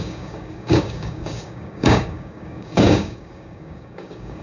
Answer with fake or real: fake